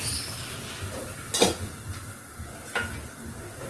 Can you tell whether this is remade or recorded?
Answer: recorded